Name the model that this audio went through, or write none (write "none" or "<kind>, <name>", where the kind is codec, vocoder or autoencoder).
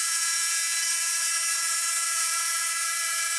vocoder, Vocos